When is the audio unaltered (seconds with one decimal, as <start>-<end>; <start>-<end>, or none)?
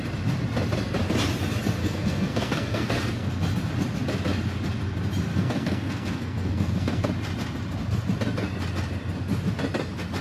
0.0-1.8; 3.3-5.3; 7.1-10.2